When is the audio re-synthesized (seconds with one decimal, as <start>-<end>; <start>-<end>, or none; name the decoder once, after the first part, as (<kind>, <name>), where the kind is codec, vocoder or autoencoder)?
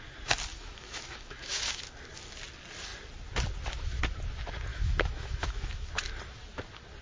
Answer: 0.5-1.8 (autoencoder, DAC-VAE); 4.7-5.9